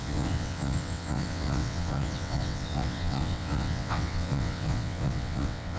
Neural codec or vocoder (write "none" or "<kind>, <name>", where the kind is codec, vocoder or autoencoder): vocoder, WaveNeXt